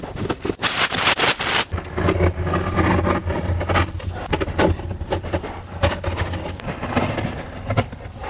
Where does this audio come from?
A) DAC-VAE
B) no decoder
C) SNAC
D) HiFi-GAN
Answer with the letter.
B